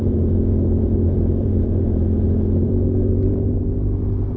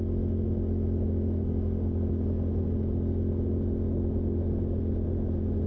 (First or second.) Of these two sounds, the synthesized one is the first